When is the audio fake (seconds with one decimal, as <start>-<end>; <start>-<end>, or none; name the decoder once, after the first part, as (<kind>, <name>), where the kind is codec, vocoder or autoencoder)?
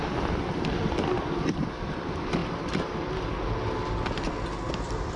0.0-2.4 (vocoder, BigVGAN v2); 4.7-5.2